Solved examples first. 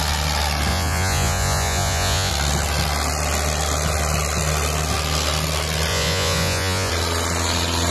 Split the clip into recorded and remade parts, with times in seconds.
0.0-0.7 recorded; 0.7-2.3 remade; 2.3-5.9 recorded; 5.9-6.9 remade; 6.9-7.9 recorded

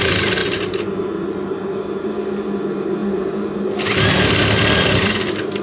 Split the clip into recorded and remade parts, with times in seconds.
0.0-5.6 recorded